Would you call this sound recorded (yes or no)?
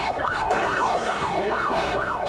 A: no